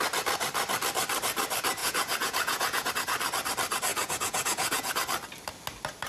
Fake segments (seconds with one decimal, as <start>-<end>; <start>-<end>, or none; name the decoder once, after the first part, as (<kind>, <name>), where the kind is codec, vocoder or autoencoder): 1.8-2.9 (vocoder, Vocos); 3.9-4.9